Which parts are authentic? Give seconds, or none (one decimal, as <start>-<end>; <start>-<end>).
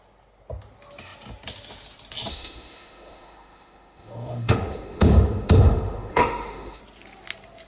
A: 0.0-2.3; 6.8-7.7